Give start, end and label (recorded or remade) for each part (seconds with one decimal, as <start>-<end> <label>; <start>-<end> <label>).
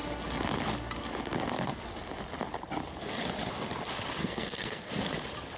0.0-4.2 recorded; 4.2-4.9 remade; 4.9-5.6 recorded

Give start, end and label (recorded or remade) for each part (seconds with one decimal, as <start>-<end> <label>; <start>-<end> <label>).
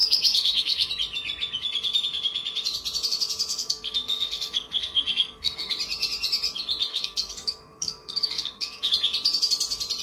0.0-0.9 remade; 0.9-3.5 recorded; 3.5-5.7 remade; 5.7-6.9 recorded; 6.9-8.9 remade; 8.9-10.0 recorded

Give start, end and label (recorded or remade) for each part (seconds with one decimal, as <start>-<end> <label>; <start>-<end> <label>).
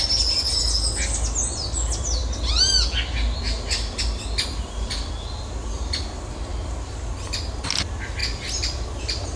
0.0-9.4 recorded